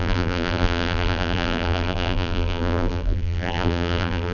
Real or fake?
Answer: fake